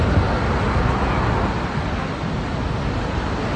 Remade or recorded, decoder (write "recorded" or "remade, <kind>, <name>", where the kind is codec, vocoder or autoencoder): recorded